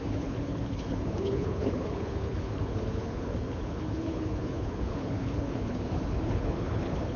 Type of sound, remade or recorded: remade